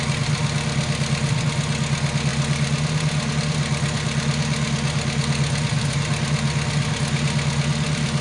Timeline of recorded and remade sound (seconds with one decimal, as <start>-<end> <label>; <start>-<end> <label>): 0.0-8.2 recorded